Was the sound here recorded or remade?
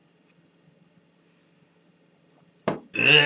recorded